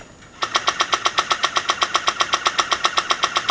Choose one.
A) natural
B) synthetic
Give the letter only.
A